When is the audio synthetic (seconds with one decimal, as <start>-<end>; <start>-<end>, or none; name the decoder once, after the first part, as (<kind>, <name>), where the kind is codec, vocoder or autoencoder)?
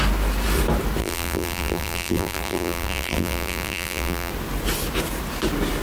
1.0-4.3 (vocoder, BigVGAN v2)